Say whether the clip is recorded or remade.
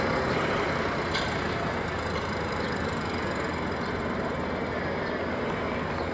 recorded